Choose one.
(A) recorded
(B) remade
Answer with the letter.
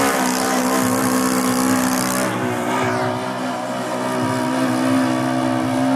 A